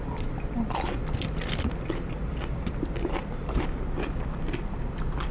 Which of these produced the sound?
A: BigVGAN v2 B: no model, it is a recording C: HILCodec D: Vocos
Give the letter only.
B